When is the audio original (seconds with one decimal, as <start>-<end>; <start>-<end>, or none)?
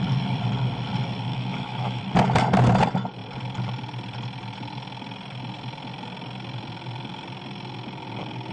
0.0-1.3; 2.0-8.5